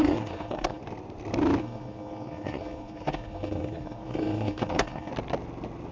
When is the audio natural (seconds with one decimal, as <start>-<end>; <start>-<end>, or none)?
0.8-1.6; 5.1-5.9